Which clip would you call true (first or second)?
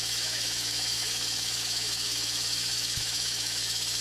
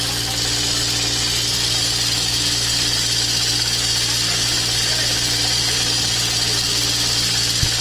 second